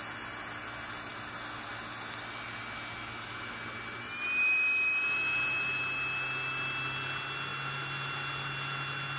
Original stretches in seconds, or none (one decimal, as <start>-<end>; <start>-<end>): 0.0-9.2

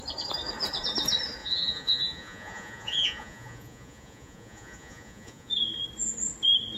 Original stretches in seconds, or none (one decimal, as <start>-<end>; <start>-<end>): 0.0-1.4; 5.5-6.8